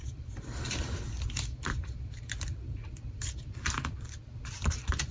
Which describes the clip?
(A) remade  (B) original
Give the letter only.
A